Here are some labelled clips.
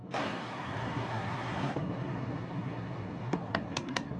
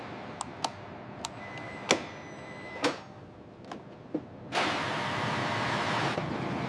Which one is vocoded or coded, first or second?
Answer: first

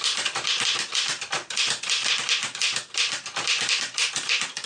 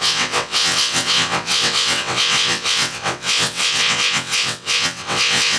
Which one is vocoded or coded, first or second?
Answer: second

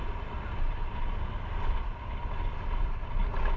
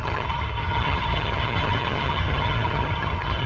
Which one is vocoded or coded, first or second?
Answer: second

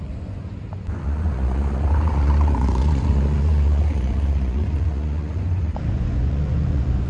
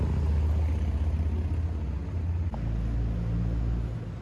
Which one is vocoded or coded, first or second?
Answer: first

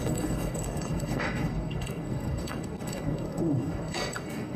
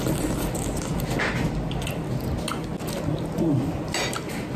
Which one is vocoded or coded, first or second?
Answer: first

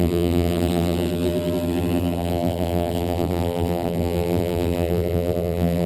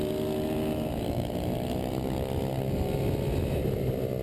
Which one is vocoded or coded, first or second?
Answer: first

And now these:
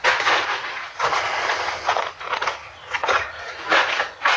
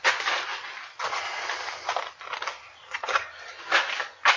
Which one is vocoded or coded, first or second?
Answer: first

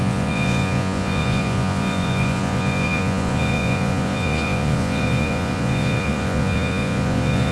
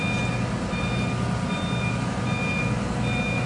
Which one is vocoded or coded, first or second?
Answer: first